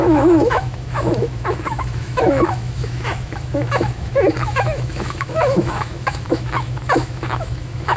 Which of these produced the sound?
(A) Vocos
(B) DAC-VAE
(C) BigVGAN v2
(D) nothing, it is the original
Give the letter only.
B